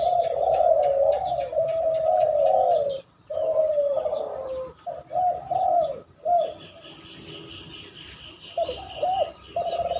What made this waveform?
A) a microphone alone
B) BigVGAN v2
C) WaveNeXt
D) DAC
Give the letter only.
A